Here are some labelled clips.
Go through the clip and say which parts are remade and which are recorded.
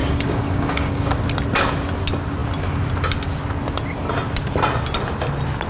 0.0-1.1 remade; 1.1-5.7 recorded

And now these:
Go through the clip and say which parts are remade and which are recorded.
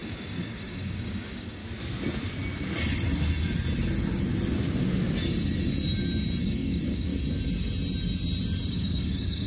0.0-1.6 remade; 1.6-6.4 recorded; 6.4-7.1 remade; 7.1-8.7 recorded; 8.7-9.5 remade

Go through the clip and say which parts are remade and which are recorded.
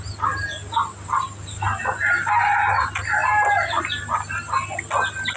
0.0-5.4 recorded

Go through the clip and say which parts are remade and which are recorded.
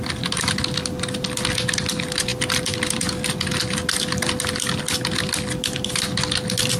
0.0-6.8 recorded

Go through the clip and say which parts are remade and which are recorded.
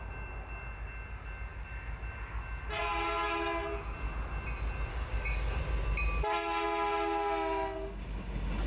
0.0-4.9 recorded; 4.9-5.6 remade; 5.6-8.7 recorded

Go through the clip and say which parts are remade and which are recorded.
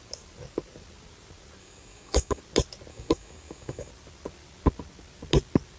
0.0-1.6 recorded; 1.6-2.4 remade; 2.4-2.9 recorded; 2.9-3.9 remade; 3.9-5.8 recorded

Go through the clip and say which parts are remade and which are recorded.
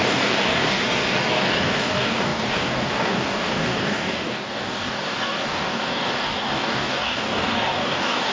0.0-0.8 remade; 0.8-1.3 recorded; 1.3-8.3 remade